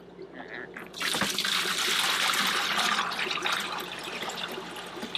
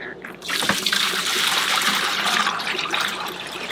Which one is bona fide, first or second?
first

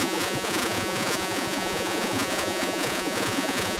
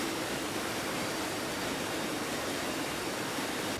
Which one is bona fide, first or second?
second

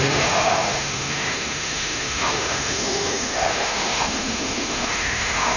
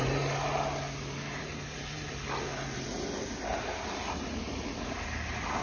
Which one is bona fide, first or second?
second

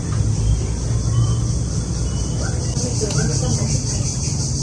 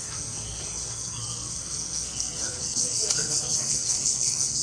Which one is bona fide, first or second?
first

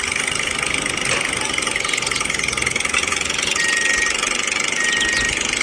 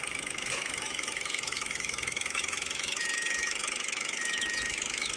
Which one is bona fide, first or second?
first